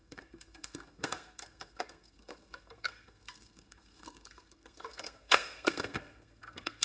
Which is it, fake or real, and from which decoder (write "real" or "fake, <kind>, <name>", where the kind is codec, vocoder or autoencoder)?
fake, codec, SNAC